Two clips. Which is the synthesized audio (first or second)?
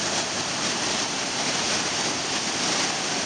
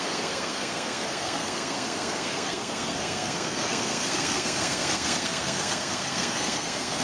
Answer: second